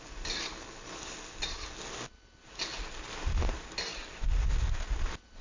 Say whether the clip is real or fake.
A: real